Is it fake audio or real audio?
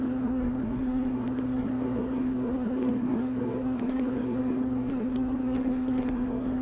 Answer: fake